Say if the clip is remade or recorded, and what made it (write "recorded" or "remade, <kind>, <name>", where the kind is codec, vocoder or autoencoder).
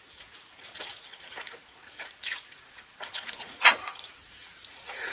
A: remade, vocoder, Vocos